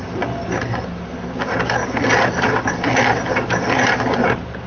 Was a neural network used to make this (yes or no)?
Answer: no